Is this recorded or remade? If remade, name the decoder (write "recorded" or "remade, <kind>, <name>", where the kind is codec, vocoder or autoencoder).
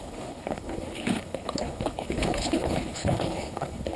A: remade, codec, HILCodec